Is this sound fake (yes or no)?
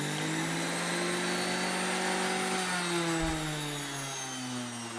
no